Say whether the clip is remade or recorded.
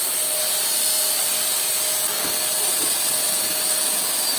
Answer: recorded